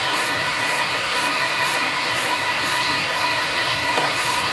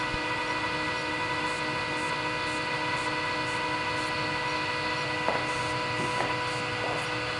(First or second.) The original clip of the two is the second